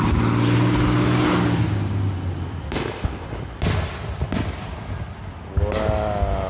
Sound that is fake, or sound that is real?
real